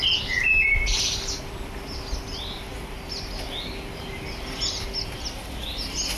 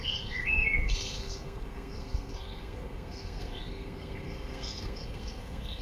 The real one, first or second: first